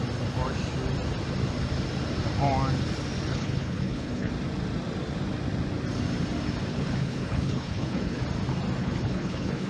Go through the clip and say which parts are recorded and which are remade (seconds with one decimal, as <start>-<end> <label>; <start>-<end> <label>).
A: 0.0-3.3 recorded; 3.3-4.3 remade; 4.3-6.7 recorded; 6.7-8.2 remade; 8.2-8.8 recorded; 8.8-9.7 remade